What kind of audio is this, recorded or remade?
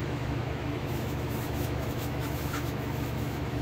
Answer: remade